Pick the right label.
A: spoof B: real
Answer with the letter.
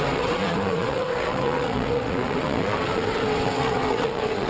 A